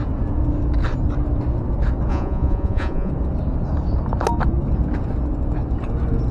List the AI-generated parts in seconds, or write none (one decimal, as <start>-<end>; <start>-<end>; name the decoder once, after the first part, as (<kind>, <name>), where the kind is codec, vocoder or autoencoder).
2.1-3.1 (vocoder, Vocos)